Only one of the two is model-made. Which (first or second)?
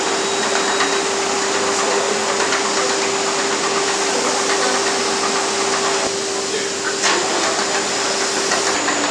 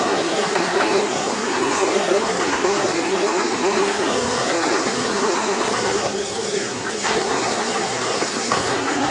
second